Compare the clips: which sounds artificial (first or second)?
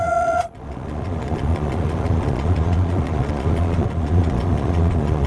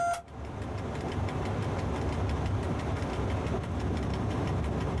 first